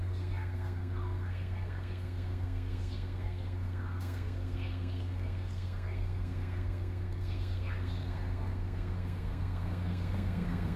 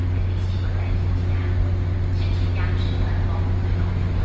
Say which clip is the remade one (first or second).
first